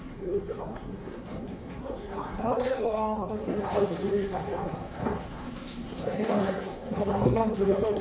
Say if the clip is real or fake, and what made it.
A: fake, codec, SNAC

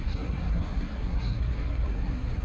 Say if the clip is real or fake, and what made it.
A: fake, codec, SNAC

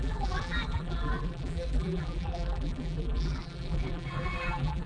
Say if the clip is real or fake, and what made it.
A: fake, vocoder, BigVGAN v2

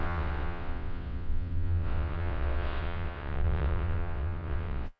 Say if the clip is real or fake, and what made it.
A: fake, vocoder, WaveNeXt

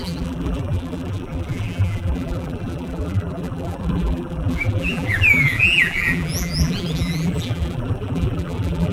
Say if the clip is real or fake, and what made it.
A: fake, vocoder, BigVGAN v2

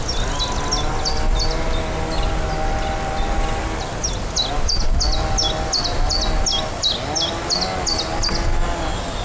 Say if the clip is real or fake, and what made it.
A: real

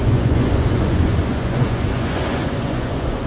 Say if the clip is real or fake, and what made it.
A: fake, vocoder, Vocos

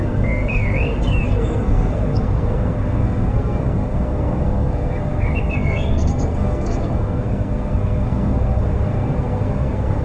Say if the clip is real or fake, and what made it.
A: fake, codec, SNAC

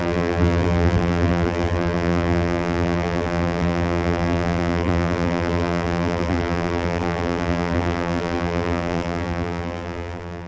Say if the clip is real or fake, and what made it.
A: fake, vocoder, BigVGAN v2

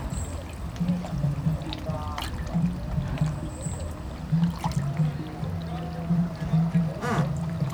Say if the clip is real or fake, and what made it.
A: real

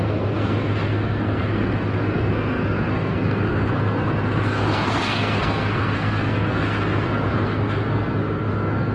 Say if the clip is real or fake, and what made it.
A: fake, codec, SNAC